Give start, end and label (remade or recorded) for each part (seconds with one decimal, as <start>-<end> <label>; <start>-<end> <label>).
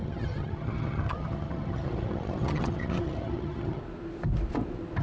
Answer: 0.0-3.8 remade; 3.8-5.0 recorded